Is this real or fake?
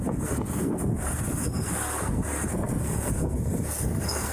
fake